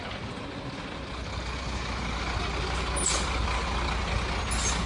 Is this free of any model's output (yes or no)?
yes